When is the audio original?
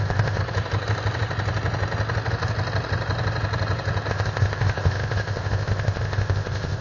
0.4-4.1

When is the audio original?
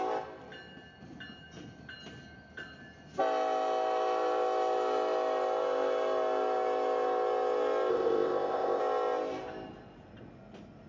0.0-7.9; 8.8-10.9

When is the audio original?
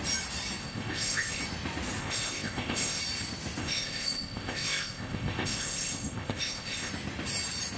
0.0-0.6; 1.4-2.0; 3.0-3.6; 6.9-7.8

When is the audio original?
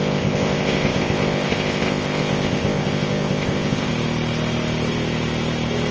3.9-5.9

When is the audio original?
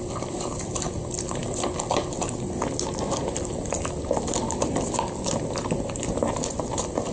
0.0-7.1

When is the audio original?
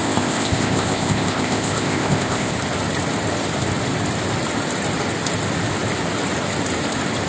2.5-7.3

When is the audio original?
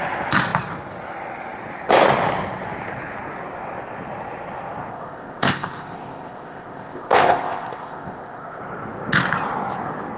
0.0-4.9; 8.6-10.2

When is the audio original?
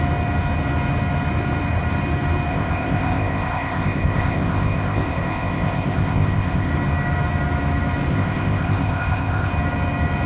0.0-2.5; 6.7-8.1; 9.5-10.3